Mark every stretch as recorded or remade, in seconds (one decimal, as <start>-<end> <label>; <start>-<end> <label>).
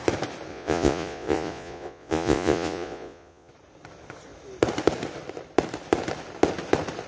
0.0-0.5 recorded; 0.5-3.5 remade; 3.5-7.1 recorded